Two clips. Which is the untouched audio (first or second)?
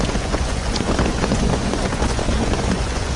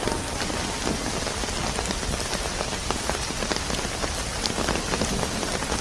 second